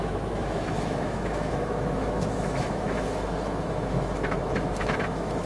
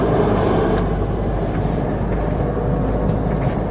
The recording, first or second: second